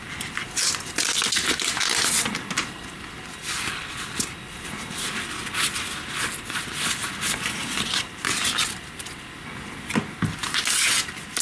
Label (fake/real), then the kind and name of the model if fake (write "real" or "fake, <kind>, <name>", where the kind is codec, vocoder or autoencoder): real